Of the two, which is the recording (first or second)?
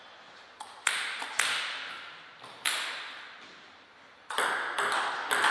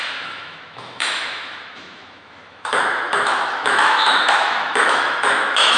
first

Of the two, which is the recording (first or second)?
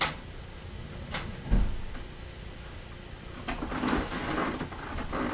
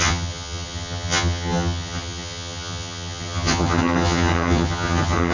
first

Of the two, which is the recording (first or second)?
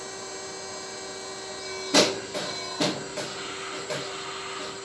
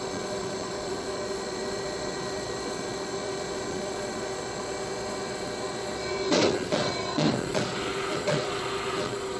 first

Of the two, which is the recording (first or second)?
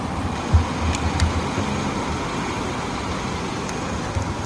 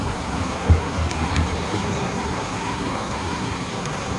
first